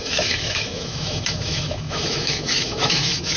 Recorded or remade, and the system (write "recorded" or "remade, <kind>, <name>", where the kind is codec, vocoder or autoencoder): remade, autoencoder, DAC-VAE